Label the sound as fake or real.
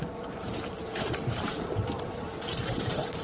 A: fake